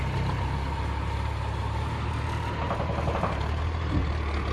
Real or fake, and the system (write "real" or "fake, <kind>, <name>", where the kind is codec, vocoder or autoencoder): real